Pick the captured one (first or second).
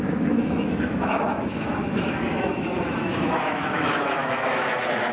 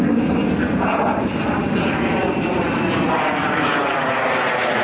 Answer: second